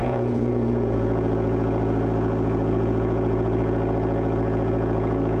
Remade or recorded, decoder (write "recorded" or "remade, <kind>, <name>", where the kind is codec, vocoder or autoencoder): remade, vocoder, Vocos